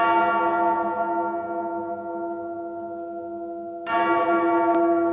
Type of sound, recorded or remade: recorded